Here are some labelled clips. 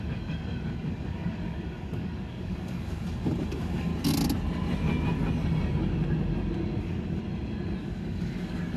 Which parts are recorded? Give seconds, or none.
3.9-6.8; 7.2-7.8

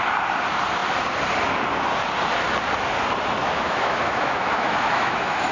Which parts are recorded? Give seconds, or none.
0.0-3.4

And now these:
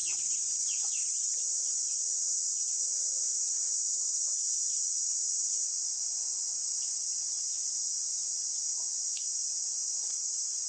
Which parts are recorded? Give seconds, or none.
1.4-6.6; 7.4-10.0

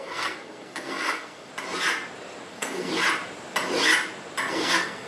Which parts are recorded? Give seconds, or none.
1.5-2.5; 2.9-4.5

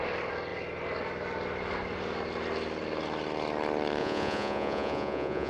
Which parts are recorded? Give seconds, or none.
0.0-4.0